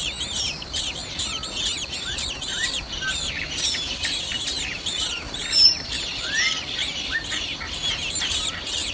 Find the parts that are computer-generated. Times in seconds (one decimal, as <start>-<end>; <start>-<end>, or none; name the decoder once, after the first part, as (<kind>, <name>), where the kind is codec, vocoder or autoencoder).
0.0-8.9 (vocoder, BigVGAN v2)